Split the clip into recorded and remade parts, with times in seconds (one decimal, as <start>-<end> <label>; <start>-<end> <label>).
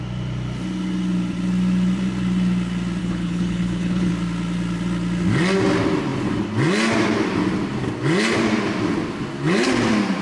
0.0-3.0 recorded; 3.0-4.1 remade; 4.1-10.2 recorded